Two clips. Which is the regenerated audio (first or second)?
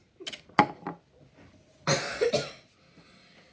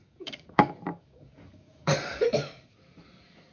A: second